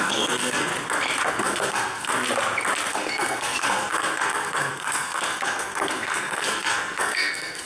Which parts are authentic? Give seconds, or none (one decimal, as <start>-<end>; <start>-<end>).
0.7-1.3; 2.1-2.9